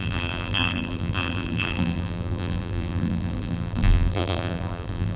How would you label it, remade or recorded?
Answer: remade